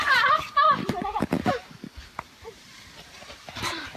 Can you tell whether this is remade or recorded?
recorded